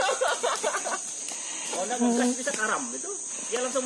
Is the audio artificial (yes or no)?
no